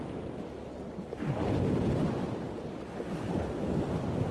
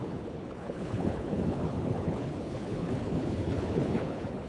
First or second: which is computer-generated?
second